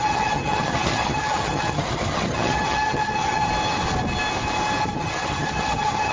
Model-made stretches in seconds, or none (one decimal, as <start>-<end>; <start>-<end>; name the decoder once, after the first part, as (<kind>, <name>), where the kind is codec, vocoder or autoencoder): 0.0-3.5 (vocoder, HiFi-GAN); 4.8-6.1